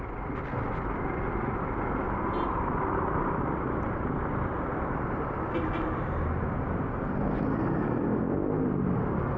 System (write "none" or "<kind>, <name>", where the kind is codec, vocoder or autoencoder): none